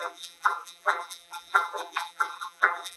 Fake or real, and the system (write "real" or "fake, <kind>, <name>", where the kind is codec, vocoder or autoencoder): fake, vocoder, BigVGAN v2